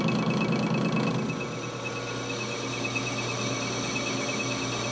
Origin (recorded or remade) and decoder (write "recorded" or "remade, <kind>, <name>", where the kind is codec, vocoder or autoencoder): recorded